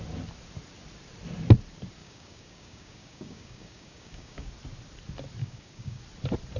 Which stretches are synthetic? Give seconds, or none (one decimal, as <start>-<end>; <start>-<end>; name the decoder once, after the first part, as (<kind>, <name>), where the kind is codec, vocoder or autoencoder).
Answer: 2.0-4.5 (codec, DAC); 5.4-6.0